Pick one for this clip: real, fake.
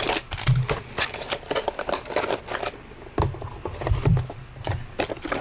real